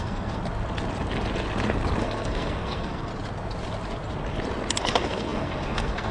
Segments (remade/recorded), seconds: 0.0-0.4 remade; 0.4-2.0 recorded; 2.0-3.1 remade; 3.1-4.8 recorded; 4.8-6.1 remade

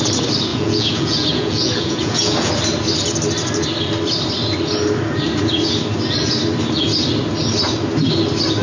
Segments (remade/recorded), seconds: 0.0-0.5 recorded; 0.5-2.5 remade; 2.5-8.6 recorded

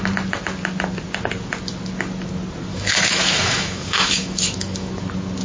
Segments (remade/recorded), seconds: 0.0-2.7 recorded; 2.7-4.9 remade; 4.9-5.4 recorded

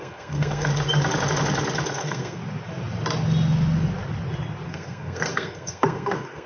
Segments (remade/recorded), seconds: 0.0-0.7 remade; 0.7-1.9 recorded; 1.9-2.4 remade; 2.4-4.7 recorded; 4.7-6.5 remade

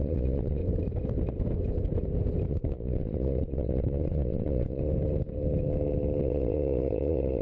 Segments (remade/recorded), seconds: 0.0-0.6 remade; 0.6-2.5 recorded; 2.5-4.8 remade; 4.8-6.2 recorded; 6.2-7.4 remade

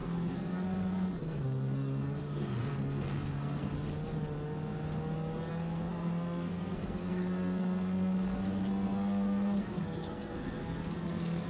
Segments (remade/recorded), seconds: 0.0-3.7 remade; 3.7-5.5 recorded; 5.5-11.5 remade